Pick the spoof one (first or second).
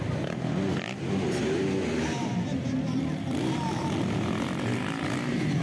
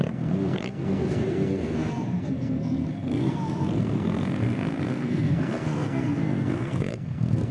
second